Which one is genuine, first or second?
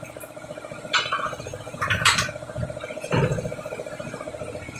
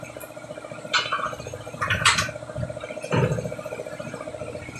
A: second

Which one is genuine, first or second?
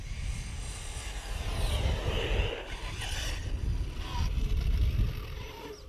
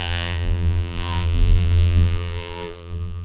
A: first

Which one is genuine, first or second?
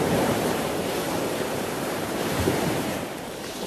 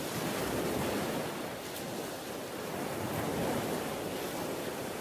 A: second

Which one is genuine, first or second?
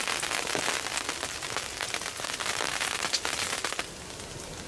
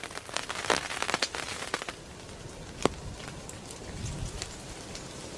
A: first